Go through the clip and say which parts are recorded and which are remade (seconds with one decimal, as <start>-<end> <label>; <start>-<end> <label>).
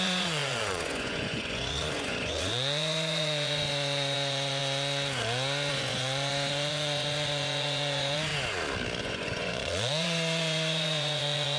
0.0-4.6 remade; 4.6-5.7 recorded; 5.7-8.3 remade; 8.3-9.0 recorded; 9.0-11.6 remade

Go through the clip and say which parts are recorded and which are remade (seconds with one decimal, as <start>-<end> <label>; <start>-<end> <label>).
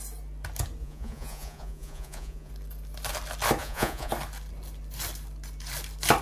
0.0-0.8 recorded; 0.8-2.5 remade; 2.5-3.6 recorded; 3.6-4.1 remade; 4.1-6.2 recorded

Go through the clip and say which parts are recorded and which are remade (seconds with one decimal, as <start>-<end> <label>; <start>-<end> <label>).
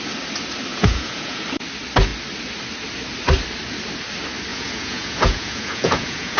0.0-0.7 recorded; 0.7-1.4 remade; 1.4-4.5 recorded; 4.5-6.4 remade